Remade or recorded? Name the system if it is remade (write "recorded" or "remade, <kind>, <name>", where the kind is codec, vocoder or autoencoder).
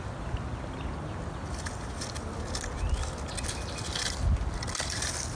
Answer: recorded